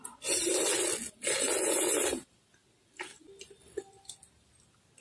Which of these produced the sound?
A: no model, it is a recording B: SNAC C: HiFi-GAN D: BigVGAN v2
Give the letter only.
A